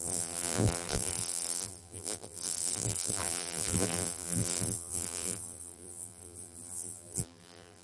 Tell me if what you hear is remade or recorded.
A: remade